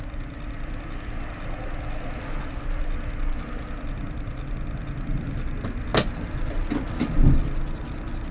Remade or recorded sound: recorded